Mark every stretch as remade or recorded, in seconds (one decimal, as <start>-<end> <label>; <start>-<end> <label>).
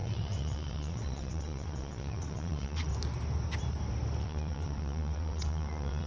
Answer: 0.0-2.9 remade; 2.9-4.2 recorded; 4.2-6.1 remade